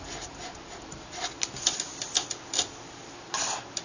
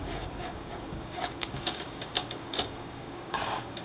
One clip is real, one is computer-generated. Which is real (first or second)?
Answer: first